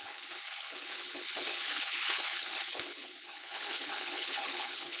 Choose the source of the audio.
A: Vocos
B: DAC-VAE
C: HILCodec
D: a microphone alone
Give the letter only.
C